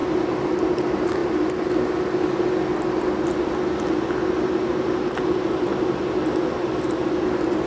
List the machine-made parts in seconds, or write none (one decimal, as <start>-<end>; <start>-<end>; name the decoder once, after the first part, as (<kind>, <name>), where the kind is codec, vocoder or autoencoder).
0.0-1.2 (vocoder, BigVGAN v2); 4.4-5.7